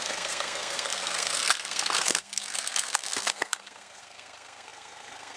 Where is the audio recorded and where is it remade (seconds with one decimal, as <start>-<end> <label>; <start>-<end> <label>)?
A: 0.0-5.4 remade